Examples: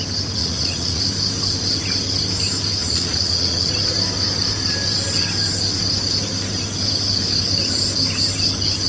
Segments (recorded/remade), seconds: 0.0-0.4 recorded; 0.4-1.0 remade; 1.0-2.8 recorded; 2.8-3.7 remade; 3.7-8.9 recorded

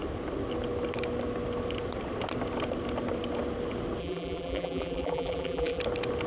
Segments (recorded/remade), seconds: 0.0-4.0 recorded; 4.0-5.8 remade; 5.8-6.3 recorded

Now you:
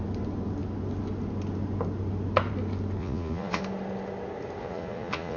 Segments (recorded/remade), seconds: 0.0-3.0 recorded; 3.0-3.6 remade; 3.6-4.6 recorded; 4.6-5.4 remade

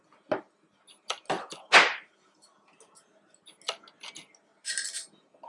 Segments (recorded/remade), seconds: 0.0-4.5 recorded; 4.5-5.5 remade

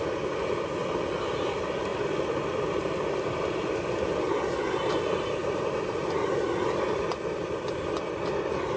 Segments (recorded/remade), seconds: 0.0-8.8 recorded